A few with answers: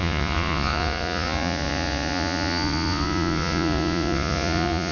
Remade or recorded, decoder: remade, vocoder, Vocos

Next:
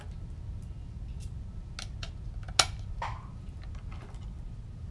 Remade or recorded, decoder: recorded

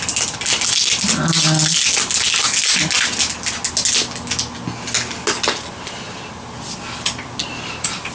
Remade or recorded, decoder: recorded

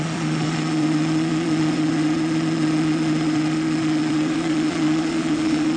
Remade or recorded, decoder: remade, vocoder, Vocos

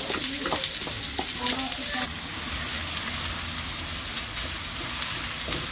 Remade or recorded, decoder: recorded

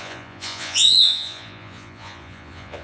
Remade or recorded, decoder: remade, vocoder, Vocos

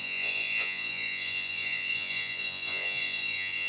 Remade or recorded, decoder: remade, vocoder, Vocos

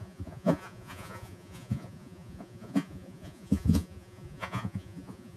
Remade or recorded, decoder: remade, vocoder, Vocos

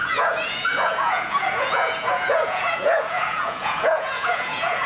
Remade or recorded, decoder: remade, vocoder, Vocos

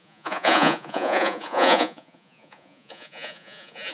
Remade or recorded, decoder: remade, vocoder, Vocos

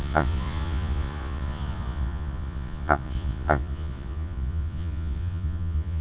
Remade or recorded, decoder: remade, vocoder, Vocos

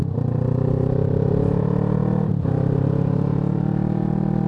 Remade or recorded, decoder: recorded